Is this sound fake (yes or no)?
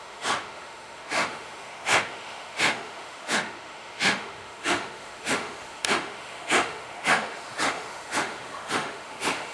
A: yes